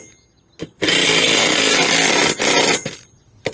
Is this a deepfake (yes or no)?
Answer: no